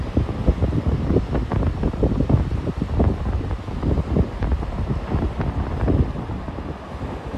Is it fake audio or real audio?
real